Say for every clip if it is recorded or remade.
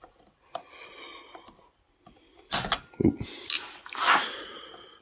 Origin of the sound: recorded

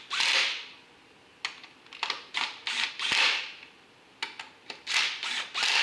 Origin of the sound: recorded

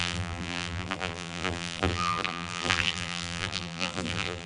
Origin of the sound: remade